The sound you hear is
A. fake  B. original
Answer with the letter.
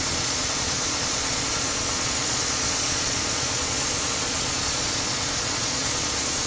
A